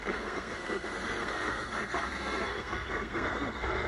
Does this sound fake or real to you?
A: fake